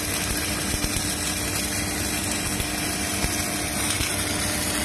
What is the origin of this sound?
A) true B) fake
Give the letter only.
A